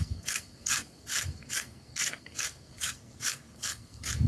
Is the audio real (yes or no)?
no